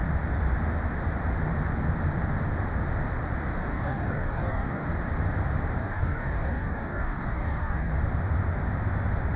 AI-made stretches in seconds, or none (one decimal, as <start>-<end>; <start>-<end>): 3.7-4.9; 5.8-7.9